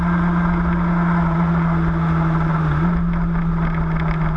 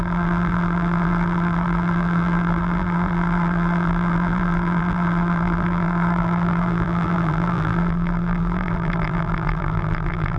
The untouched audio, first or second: first